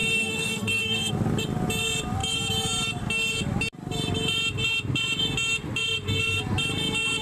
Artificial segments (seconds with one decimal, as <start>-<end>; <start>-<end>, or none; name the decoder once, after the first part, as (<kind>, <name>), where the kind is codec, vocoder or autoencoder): 0.0-1.1 (codec, SNAC)